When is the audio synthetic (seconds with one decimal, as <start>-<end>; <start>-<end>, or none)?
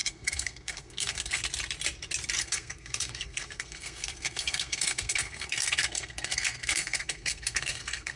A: 0.0-1.4; 2.4-8.2